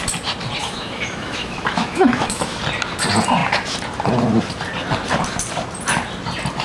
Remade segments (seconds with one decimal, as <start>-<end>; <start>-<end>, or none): 0.6-2.6